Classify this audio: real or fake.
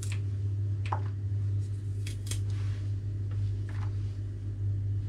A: real